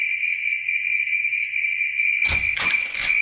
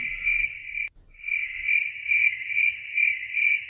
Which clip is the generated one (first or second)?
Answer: first